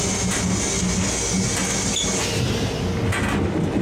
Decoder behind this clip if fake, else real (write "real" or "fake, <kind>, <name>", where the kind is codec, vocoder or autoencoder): real